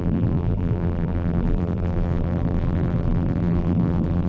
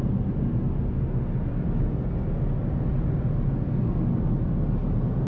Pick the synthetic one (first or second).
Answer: first